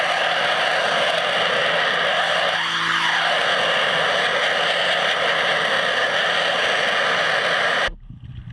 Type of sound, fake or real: real